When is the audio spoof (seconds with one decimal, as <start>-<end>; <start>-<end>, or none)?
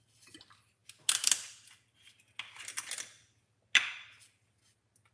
none